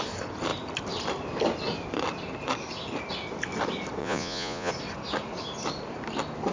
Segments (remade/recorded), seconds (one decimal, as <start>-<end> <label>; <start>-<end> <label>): 0.0-4.0 recorded; 4.0-4.7 remade; 4.7-6.5 recorded